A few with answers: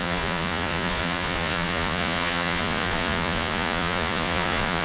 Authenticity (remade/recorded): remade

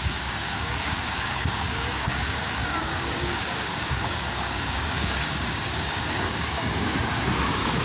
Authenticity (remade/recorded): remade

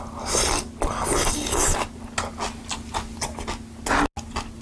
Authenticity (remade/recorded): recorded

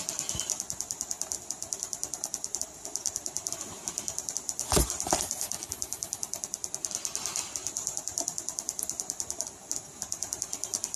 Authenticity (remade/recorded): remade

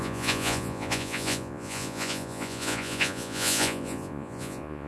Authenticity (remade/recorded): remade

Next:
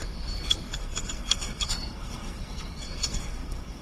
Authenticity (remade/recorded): remade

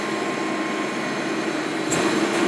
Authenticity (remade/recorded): recorded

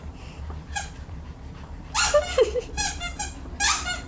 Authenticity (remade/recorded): remade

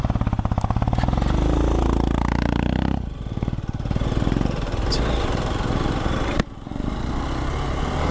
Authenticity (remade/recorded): recorded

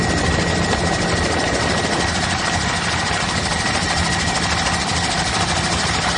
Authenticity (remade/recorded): remade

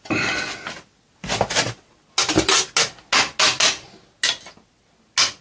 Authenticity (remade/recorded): recorded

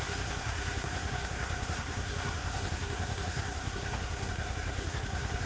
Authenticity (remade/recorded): remade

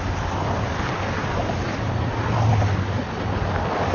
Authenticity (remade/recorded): recorded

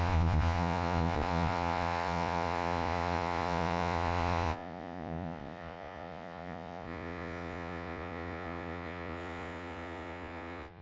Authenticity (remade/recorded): remade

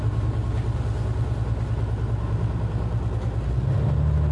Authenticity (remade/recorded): recorded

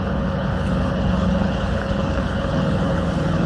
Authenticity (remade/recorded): remade